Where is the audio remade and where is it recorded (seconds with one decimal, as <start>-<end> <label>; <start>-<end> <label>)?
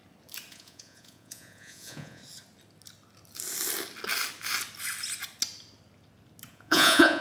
0.0-0.5 recorded; 0.5-2.2 remade; 2.2-6.5 recorded; 6.5-7.2 remade